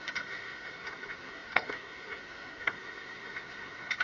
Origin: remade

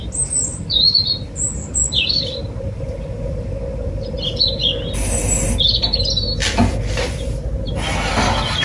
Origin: recorded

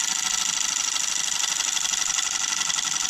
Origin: recorded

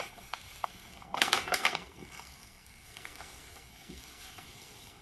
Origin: remade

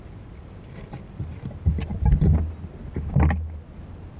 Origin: recorded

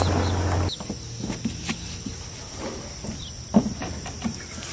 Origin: recorded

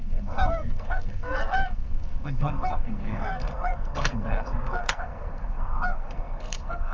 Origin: remade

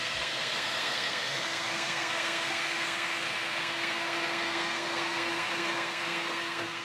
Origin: remade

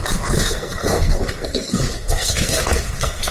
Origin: remade